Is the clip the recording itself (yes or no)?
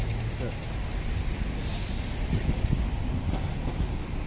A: yes